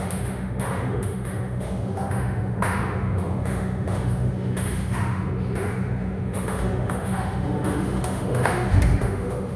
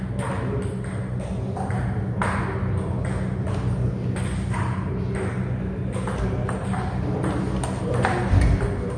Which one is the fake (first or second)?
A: first